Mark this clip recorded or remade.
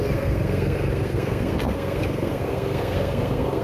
remade